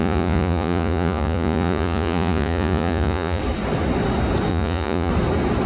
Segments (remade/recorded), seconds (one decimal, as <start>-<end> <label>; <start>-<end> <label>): 0.0-3.4 remade; 3.4-4.5 recorded; 4.5-5.1 remade; 5.1-5.7 recorded